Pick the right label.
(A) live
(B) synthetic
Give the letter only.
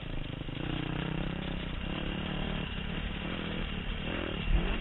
B